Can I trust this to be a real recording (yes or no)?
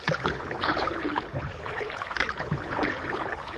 no